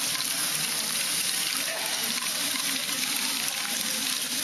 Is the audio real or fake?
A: real